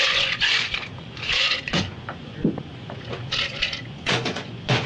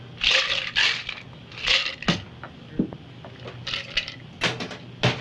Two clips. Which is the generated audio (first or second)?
first